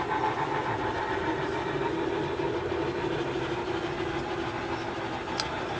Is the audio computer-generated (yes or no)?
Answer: no